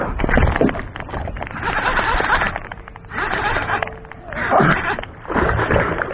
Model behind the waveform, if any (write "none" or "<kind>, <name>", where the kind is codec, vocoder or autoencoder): none